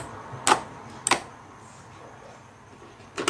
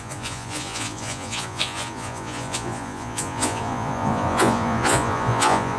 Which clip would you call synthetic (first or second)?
second